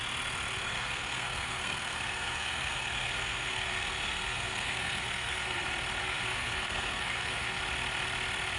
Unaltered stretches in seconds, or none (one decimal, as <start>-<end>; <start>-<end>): 0.0-0.6; 5.6-6.0; 7.6-8.6